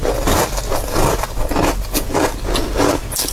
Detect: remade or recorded recorded